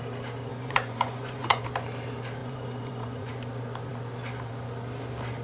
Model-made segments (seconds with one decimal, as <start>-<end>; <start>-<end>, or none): 0.5-1.6; 2.4-3.3

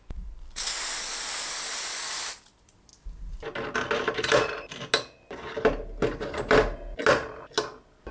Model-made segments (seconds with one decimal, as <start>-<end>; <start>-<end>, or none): none